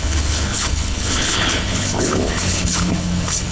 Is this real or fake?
fake